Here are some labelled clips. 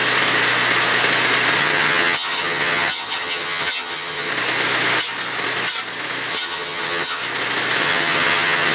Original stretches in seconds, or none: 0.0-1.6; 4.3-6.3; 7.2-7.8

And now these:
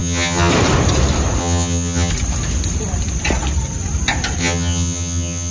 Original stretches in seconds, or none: 0.5-1.4; 2.1-4.4

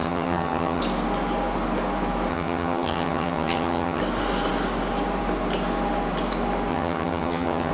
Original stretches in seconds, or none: 0.8-2.3; 4.0-6.7

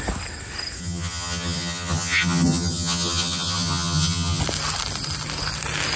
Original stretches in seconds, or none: 0.0-0.8; 4.4-6.0

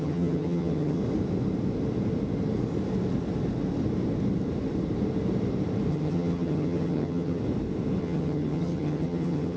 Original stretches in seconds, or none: 1.0-5.9; 7.4-8.0

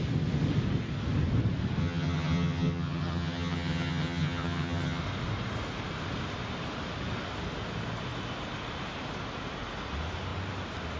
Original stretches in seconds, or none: 0.0-1.8; 5.0-11.0

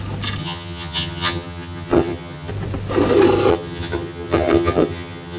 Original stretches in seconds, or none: 0.0-0.4; 2.5-3.5